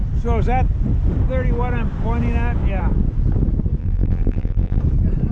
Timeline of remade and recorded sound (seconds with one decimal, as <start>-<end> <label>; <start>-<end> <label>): 0.0-3.8 recorded; 3.8-4.8 remade; 4.8-5.3 recorded